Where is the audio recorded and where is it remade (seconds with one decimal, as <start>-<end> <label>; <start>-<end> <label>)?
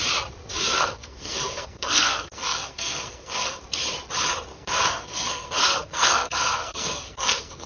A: 0.0-0.5 recorded; 0.5-3.6 remade; 3.6-4.5 recorded; 4.5-7.7 remade